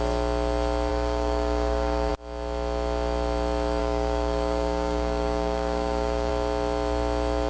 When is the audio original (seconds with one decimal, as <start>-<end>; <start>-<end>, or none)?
0.0-0.9; 2.1-3.8; 6.3-7.5